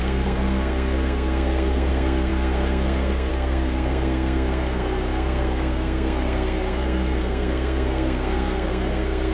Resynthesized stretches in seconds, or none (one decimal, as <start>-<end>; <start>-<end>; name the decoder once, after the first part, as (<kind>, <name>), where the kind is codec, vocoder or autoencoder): 0.0-9.3 (codec, SNAC)